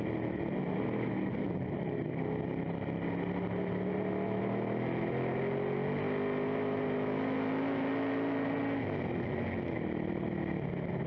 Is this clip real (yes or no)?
yes